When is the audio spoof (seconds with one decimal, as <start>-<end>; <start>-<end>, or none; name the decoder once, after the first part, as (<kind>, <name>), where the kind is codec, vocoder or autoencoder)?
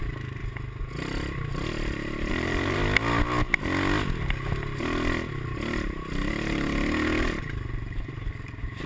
0.0-0.4 (vocoder, BigVGAN v2); 2.3-2.8; 7.4-8.9